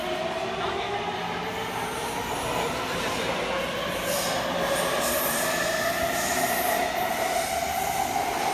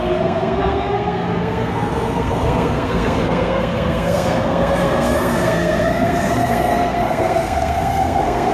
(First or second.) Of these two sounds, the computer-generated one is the second